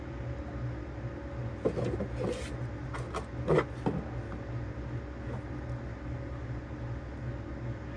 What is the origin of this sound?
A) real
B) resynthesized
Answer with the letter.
A